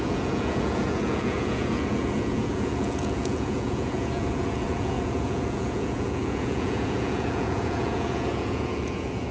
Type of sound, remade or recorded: remade